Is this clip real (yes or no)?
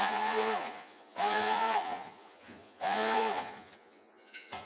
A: no